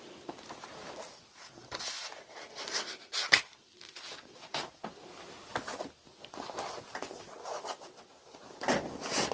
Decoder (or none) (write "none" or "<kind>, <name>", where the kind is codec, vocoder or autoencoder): none